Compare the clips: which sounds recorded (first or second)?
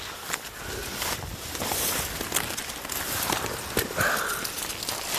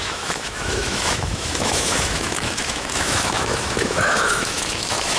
first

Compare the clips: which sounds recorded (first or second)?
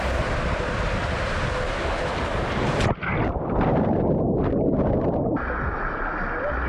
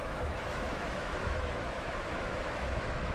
first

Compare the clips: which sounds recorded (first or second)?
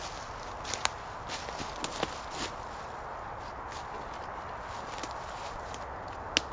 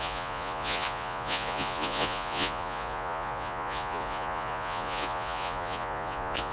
first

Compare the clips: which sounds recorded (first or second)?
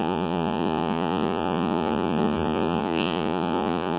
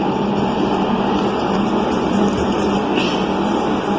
second